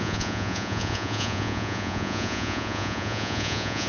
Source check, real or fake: fake